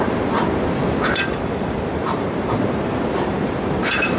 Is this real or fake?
fake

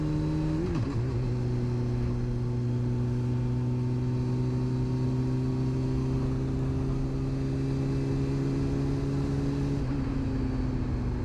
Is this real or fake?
real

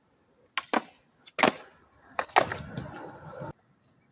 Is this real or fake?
real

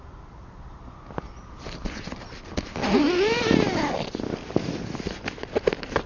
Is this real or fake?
real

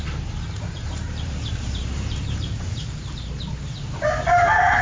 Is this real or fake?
fake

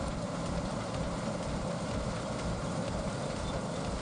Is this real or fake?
real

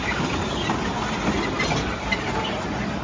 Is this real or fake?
real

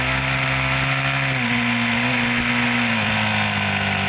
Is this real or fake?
real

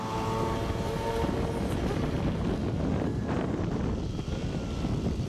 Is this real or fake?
real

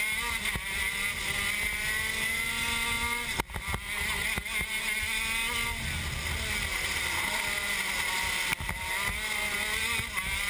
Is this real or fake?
real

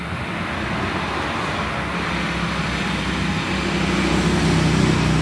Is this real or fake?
real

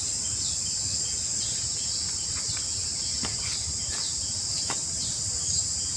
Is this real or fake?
real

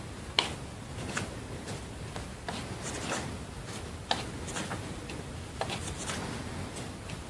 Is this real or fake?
real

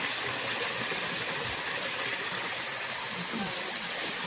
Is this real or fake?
fake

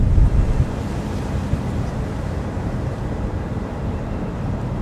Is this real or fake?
fake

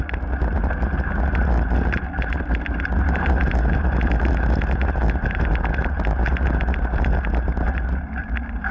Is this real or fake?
real